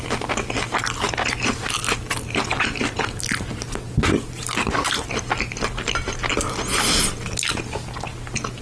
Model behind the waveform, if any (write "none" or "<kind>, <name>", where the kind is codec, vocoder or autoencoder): none